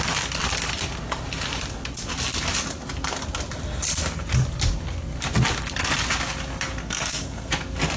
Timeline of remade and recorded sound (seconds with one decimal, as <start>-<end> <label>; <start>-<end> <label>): 0.0-6.8 recorded; 6.8-7.5 remade; 7.5-8.0 recorded